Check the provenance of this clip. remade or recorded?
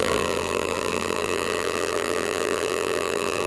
remade